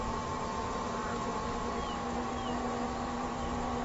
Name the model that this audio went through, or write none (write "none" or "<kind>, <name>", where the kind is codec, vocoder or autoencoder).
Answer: none